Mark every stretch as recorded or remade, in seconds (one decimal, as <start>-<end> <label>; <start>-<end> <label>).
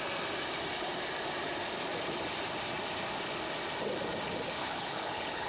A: 0.0-4.6 recorded; 4.6-5.5 remade